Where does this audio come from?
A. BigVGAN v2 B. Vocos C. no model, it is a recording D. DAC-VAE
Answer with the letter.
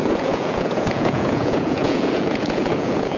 B